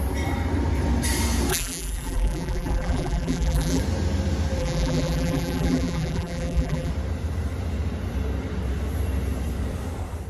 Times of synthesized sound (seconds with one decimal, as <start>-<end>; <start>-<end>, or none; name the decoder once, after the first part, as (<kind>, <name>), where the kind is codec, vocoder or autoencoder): 1.5-3.8 (vocoder, BigVGAN v2); 4.6-6.9